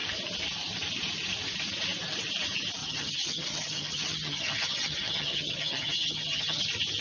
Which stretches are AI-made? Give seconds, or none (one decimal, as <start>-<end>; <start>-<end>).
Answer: 2.8-6.6

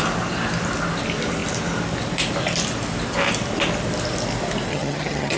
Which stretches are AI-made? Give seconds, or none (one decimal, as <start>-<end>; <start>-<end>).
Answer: 4.7-5.4

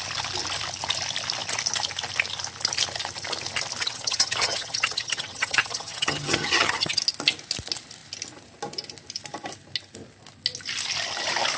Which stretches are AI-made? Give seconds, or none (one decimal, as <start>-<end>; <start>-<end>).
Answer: 3.8-7.0

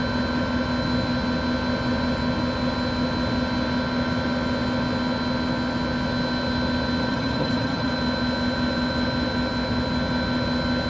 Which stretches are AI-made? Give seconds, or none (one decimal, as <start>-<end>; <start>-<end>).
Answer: 7.1-7.9

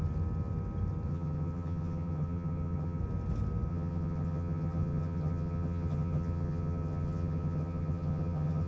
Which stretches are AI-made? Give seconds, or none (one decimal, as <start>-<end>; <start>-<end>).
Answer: 1.1-3.0; 3.7-8.7

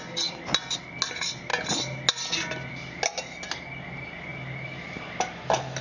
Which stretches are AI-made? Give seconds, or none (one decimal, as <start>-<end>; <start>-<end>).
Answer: none

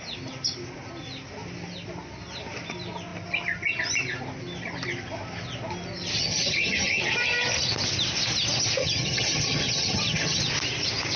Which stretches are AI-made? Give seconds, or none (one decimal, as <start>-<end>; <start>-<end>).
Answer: 6.2-7.0; 8.8-10.4

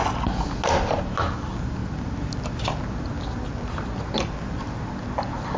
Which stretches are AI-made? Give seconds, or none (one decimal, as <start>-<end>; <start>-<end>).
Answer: none